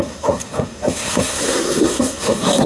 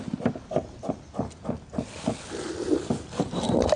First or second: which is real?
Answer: second